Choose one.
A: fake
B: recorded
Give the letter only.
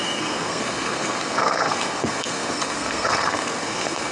A